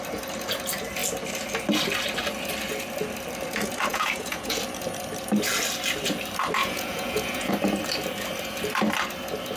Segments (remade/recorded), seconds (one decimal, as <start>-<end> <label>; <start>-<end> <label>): 0.0-3.9 recorded; 3.9-4.6 remade; 4.6-6.6 recorded; 6.6-7.5 remade; 7.5-9.6 recorded